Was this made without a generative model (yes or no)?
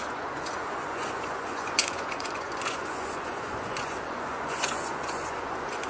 no